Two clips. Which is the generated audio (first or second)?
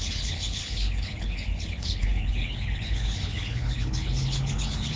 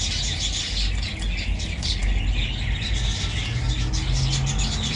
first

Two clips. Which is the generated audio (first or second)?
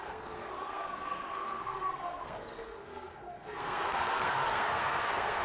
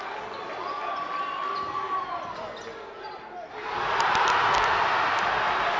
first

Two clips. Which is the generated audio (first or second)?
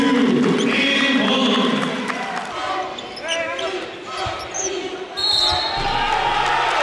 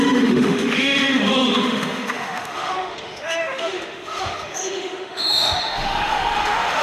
second